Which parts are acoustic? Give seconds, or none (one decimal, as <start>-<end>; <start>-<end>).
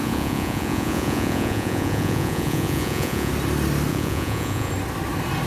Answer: 3.3-3.9; 4.7-5.5